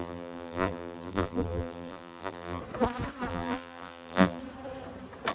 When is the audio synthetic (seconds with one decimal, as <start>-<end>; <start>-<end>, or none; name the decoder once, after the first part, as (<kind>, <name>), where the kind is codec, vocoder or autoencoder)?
0.0-2.6 (vocoder, BigVGAN v2); 3.3-4.4